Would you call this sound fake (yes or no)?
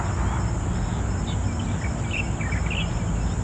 no